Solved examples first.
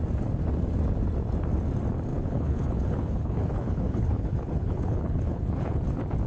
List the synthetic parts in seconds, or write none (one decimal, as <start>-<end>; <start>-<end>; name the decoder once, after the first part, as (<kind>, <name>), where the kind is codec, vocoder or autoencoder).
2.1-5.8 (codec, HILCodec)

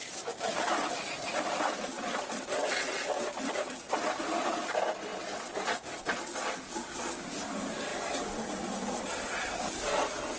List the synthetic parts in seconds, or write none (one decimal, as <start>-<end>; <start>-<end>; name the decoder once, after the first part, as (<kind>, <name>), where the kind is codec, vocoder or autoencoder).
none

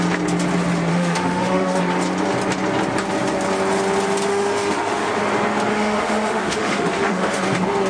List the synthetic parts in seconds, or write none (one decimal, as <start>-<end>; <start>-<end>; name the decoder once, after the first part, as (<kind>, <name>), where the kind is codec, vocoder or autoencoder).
0.9-1.8 (autoencoder, DAC-VAE); 4.3-5.1; 5.7-7.4

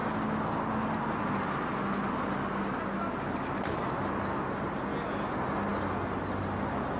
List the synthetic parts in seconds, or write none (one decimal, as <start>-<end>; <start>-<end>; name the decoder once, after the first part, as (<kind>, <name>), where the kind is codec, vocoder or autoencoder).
none

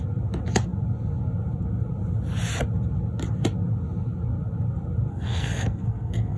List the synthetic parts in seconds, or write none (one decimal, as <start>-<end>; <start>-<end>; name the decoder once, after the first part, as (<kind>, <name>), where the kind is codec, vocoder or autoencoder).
5.1-6.4 (codec, SNAC)